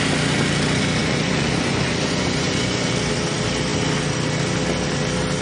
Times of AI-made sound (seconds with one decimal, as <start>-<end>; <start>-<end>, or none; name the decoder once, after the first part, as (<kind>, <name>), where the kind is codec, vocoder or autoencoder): 1.0-2.9 (vocoder, Vocos)